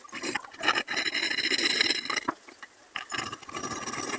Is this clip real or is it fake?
real